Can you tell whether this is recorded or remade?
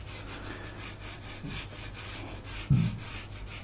recorded